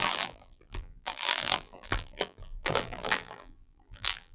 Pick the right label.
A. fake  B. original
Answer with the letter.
A